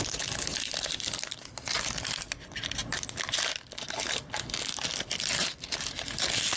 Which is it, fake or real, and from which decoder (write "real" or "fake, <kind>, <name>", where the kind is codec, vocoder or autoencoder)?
real